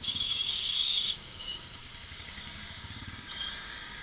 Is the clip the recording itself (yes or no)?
no